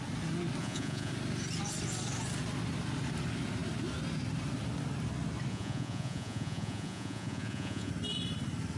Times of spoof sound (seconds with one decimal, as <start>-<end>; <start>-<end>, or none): 0.6-1.1; 5.5-7.9